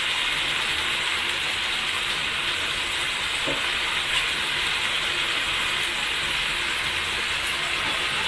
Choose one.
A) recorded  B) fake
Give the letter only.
A